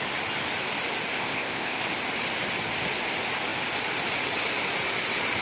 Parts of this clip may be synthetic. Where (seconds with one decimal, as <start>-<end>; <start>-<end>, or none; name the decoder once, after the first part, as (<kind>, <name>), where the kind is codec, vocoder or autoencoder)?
1.1-1.8 (codec, ZipCodec)